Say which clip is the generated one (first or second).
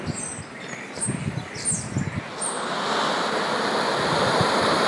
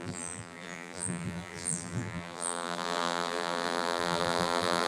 second